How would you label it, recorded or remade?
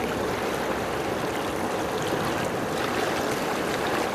recorded